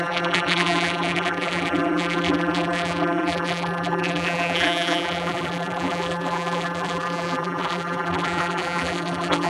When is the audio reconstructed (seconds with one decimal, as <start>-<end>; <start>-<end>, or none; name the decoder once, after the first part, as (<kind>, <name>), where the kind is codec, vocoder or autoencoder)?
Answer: 0.0-9.5 (vocoder, BigVGAN v2)